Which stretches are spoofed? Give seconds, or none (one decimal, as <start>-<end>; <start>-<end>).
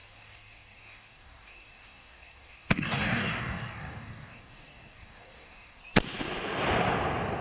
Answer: 0.0-5.8